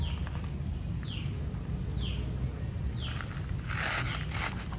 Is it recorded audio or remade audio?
recorded